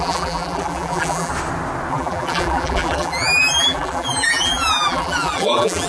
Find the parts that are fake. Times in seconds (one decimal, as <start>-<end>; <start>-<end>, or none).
0.0-1.3; 1.9-5.9